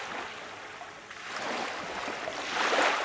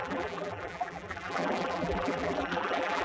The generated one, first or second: second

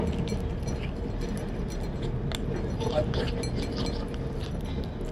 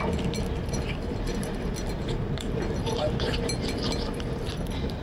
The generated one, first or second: second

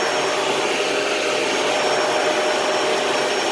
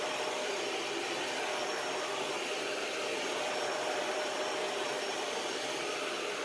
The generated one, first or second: second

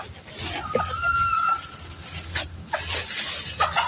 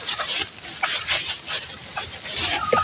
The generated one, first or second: second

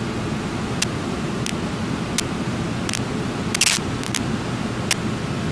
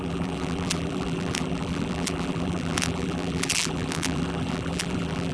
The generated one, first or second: second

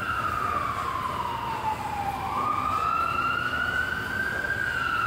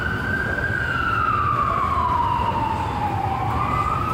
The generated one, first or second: second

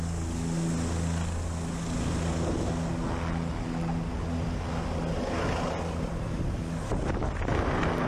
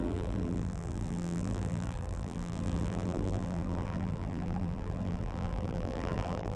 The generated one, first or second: second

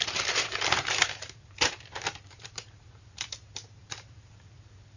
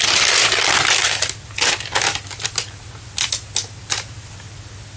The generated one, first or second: first